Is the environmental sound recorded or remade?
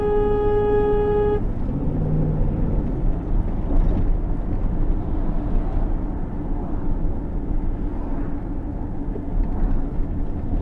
recorded